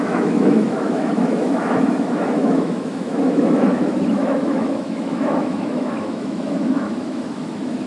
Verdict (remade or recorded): remade